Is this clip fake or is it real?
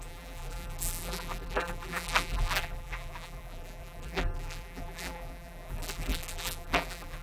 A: fake